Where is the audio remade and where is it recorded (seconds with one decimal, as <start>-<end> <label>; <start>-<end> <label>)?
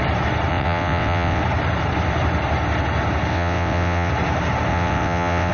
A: 0.0-0.5 recorded; 0.5-1.4 remade; 1.4-3.3 recorded; 3.3-4.1 remade; 4.1-4.7 recorded; 4.7-5.5 remade